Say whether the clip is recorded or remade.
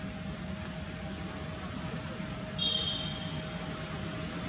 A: recorded